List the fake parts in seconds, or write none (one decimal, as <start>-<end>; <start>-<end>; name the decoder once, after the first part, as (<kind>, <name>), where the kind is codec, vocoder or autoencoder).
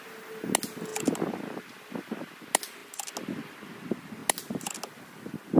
none